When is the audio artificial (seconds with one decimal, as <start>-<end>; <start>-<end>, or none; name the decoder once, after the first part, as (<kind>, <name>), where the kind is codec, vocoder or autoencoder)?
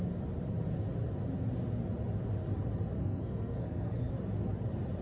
3.0-4.1 (codec, SNAC)